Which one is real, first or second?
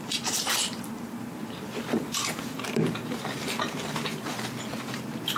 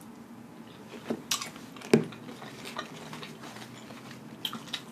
second